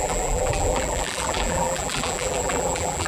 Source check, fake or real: fake